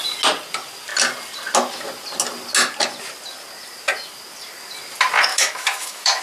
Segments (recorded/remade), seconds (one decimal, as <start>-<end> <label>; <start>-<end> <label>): 0.0-5.3 recorded; 5.3-6.2 remade